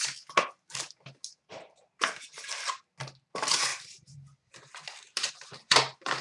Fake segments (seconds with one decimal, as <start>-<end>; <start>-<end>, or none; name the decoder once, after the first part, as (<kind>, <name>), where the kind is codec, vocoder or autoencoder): 1.5-2.5 (vocoder, BigVGAN v2); 3.7-5.3